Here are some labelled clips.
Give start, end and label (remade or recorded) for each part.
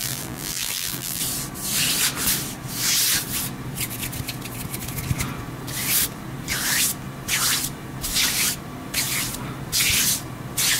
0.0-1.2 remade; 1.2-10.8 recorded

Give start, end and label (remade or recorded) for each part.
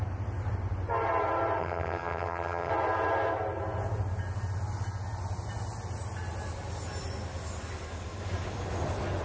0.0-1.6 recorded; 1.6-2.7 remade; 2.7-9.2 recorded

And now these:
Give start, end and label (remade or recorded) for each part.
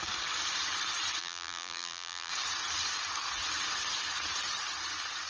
0.0-1.2 recorded; 1.2-2.3 remade; 2.3-5.3 recorded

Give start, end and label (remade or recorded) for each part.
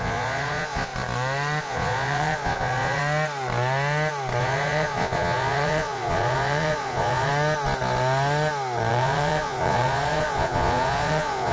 0.0-0.9 remade; 0.9-1.6 recorded; 1.6-3.0 remade; 3.0-4.4 recorded; 4.4-7.3 remade; 7.3-8.9 recorded; 8.9-11.5 remade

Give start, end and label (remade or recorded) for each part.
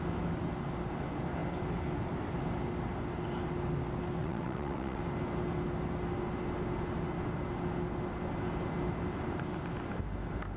0.0-4.2 recorded; 4.2-5.0 remade; 5.0-10.6 recorded